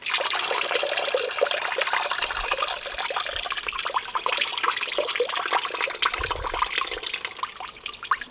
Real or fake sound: real